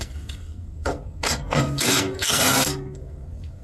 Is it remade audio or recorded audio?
remade